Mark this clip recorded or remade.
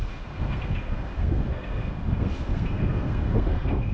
remade